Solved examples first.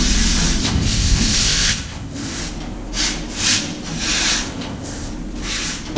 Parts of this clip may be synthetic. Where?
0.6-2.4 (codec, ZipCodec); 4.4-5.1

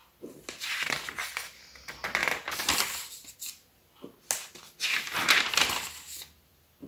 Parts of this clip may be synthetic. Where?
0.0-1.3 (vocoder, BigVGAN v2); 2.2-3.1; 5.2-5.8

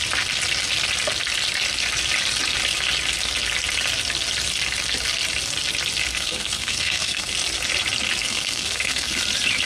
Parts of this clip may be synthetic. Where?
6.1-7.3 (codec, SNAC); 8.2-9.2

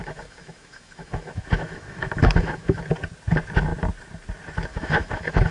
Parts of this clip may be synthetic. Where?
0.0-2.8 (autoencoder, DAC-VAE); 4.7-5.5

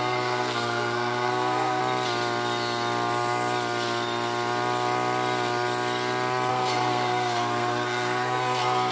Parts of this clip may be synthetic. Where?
0.0-1.8 (codec, SNAC); 6.5-8.9

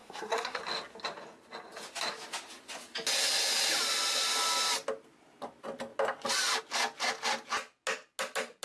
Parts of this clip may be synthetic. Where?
0.0-0.6 (codec, SNAC)

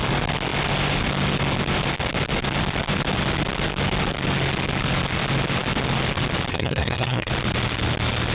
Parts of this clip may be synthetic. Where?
6.5-7.3 (codec, SNAC)